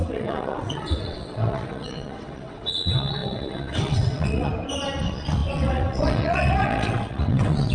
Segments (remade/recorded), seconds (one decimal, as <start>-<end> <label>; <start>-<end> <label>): 0.0-4.5 remade; 4.5-5.0 recorded; 5.0-7.7 remade